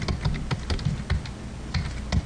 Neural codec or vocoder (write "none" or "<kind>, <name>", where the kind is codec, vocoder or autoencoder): none